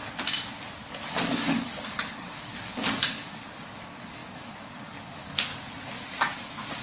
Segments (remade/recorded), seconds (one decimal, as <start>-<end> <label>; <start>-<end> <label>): 0.0-1.1 recorded; 1.1-5.5 remade; 5.5-6.8 recorded

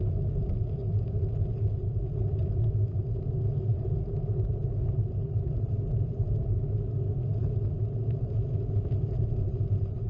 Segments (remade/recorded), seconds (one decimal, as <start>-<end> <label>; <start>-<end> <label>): 0.0-10.1 recorded

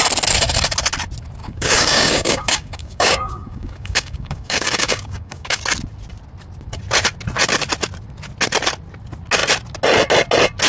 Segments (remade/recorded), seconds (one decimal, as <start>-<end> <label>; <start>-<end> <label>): 0.0-1.4 recorded; 1.4-5.6 remade; 5.6-10.7 recorded

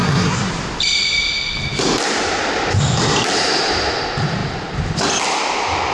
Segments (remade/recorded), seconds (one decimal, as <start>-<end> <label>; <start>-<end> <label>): 0.0-0.5 remade; 0.5-5.9 recorded

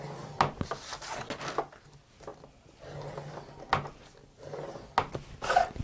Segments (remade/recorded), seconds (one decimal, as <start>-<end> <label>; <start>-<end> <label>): 0.0-5.8 recorded

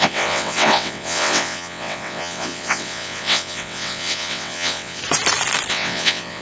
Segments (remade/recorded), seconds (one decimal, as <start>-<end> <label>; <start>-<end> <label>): 0.0-5.0 remade; 5.0-5.7 recorded; 5.7-6.4 remade

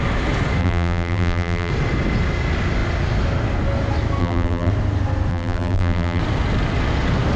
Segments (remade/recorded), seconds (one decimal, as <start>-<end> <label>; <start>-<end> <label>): 0.0-0.6 recorded; 0.6-1.7 remade; 1.7-4.2 recorded; 4.2-4.7 remade; 4.7-5.3 recorded; 5.3-6.2 remade; 6.2-7.4 recorded